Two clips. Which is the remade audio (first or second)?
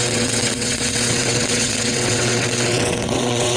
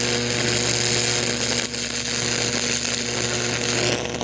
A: first